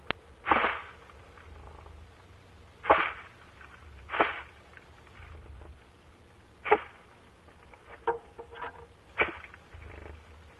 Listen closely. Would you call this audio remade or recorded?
recorded